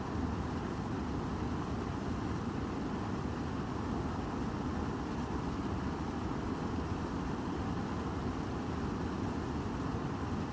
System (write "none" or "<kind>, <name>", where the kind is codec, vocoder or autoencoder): none